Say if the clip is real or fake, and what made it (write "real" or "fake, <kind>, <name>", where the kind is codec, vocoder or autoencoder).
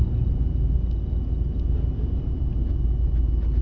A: real